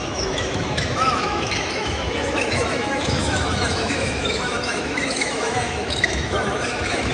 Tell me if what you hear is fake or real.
fake